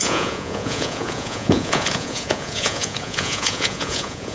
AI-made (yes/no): yes